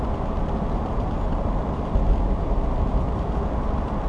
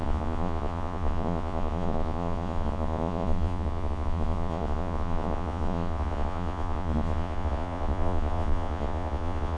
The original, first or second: first